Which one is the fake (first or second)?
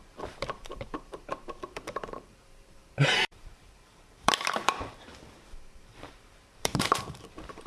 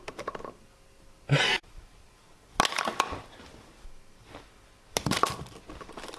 first